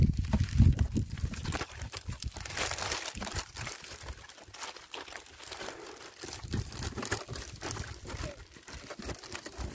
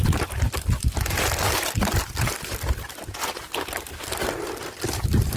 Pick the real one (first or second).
second